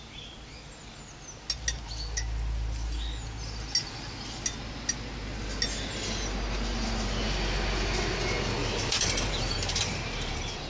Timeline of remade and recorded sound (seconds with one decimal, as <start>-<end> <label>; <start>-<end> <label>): 0.0-8.6 recorded; 8.6-10.7 remade

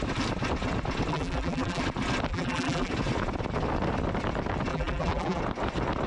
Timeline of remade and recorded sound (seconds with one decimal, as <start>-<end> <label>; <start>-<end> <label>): 0.0-1.1 recorded; 1.1-1.8 remade; 1.8-2.3 recorded; 2.3-2.9 remade; 2.9-4.7 recorded; 4.7-5.4 remade; 5.4-6.1 recorded